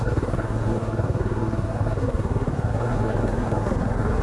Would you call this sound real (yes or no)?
no